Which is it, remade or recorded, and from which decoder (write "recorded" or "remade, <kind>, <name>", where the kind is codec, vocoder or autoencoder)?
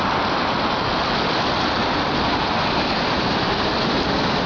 recorded